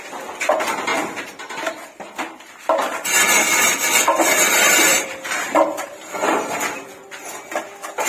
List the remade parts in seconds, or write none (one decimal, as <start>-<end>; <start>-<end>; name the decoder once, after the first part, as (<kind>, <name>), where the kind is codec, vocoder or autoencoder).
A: 4.3-6.6 (vocoder, BigVGAN v2)